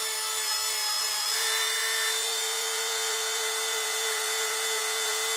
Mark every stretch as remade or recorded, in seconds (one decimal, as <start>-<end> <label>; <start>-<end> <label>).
0.0-1.0 recorded; 1.0-5.4 remade